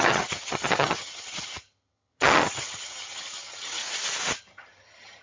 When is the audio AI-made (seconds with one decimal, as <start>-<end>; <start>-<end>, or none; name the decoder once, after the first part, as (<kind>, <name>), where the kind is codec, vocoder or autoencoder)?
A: 0.0-3.8 (vocoder, HiFi-GAN); 4.4-5.2